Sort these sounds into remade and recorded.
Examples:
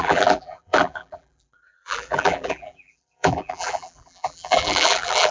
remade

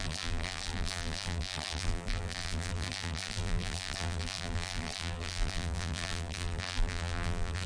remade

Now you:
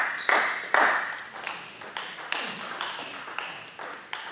recorded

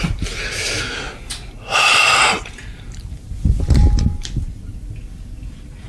recorded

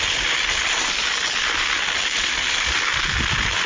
recorded